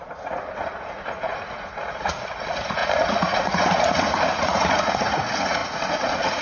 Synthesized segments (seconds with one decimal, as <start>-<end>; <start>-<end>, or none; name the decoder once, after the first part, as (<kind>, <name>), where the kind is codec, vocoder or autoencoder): 0.0-6.4 (vocoder, Vocos)